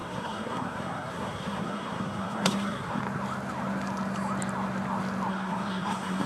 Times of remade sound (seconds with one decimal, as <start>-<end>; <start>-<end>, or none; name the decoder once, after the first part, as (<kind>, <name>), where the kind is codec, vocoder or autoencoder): 0.0-3.0 (codec, SNAC); 5.3-6.3